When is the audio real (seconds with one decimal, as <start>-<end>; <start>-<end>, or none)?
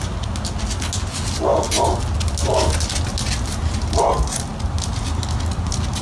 0.0-6.0